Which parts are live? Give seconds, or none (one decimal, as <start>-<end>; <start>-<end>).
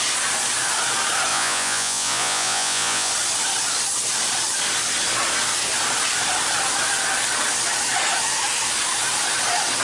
0.0-1.3; 3.1-9.8